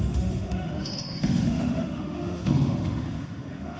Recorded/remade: remade